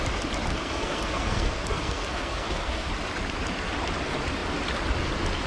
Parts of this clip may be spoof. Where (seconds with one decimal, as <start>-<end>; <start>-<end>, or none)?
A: 0.5-2.9